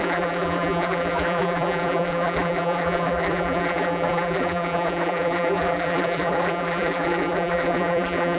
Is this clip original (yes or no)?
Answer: no